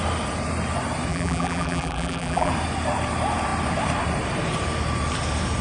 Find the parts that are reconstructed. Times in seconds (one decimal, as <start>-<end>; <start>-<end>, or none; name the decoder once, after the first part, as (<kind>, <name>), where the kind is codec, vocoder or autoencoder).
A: 1.1-2.5 (vocoder, BigVGAN v2)